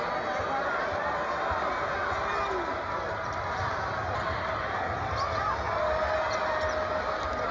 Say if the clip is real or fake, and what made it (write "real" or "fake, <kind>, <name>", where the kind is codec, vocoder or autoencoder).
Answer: real